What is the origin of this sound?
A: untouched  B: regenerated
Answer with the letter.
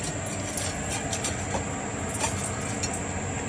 A